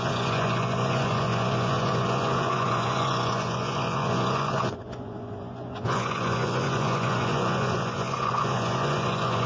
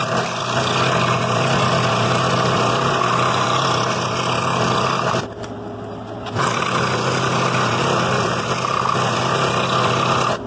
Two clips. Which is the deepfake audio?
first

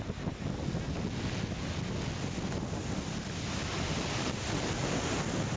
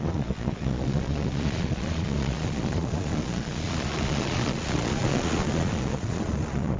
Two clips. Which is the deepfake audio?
second